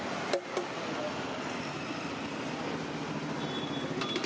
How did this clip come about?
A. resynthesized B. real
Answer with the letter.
B